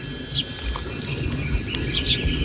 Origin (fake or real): real